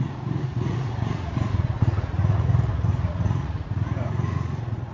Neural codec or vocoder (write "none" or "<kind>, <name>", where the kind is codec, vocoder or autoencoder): vocoder, Vocos